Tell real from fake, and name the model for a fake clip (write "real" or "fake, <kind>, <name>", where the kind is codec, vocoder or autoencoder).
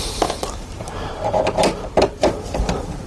fake, vocoder, BigVGAN v2